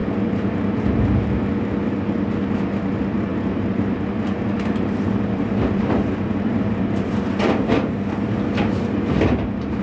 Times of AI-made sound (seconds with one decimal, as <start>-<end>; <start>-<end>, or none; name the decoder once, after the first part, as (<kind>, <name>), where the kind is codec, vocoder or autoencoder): 2.4-9.8 (vocoder, BigVGAN v2)